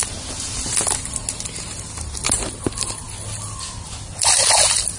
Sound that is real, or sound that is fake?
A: real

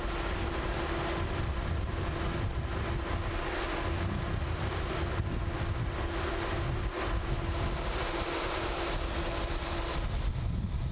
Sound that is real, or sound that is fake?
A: real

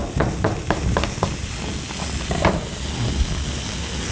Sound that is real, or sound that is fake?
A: real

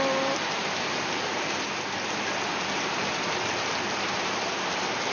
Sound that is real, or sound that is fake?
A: real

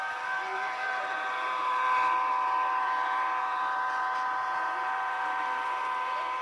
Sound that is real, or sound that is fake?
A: fake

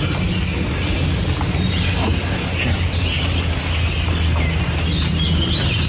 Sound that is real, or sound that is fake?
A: real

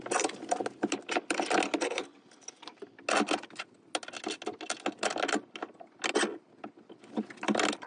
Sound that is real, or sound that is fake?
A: real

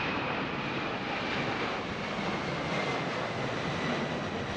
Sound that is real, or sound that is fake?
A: real